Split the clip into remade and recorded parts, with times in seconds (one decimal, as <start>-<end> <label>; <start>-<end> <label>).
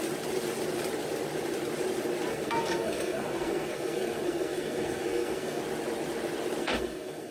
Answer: 0.0-2.3 recorded; 2.3-5.6 remade; 5.6-6.6 recorded; 6.6-7.3 remade